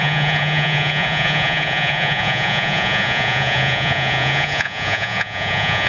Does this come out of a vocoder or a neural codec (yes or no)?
yes